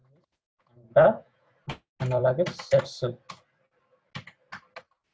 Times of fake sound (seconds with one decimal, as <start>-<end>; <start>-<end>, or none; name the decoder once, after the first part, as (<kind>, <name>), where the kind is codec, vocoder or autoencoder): 0.0-1.5 (vocoder, Vocos)